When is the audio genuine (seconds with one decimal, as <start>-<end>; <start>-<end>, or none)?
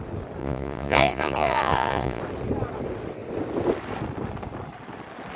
0.0-0.4; 2.2-5.4